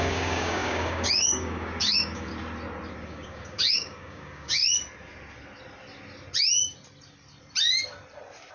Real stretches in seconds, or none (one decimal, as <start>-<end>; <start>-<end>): 2.3-2.9; 4.6-8.5